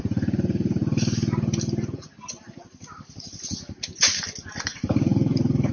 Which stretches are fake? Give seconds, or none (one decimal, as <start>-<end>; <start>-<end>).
4.7-5.7